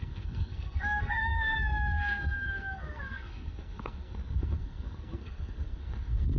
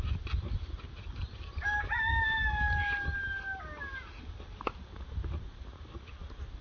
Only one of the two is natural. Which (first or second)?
second